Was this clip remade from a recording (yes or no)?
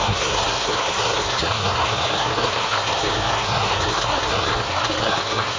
yes